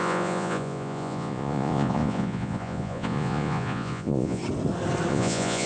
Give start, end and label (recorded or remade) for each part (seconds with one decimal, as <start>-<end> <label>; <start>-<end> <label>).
0.0-4.4 remade; 4.4-5.1 recorded; 5.1-5.7 remade